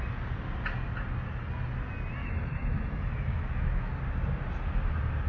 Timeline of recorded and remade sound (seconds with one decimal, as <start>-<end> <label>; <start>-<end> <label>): 0.0-2.2 recorded; 2.2-3.9 remade; 3.9-5.3 recorded